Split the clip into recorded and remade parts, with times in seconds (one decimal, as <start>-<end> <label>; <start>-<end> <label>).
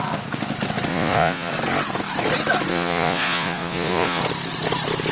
0.0-0.9 recorded; 0.9-1.5 remade; 1.5-2.7 recorded; 2.7-4.2 remade; 4.2-5.1 recorded